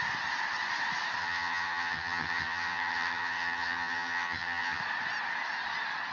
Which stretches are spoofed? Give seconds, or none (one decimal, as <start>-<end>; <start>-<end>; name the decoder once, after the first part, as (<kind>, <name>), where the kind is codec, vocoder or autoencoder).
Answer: 1.2-4.8 (vocoder, HiFi-GAN)